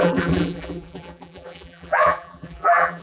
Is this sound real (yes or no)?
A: no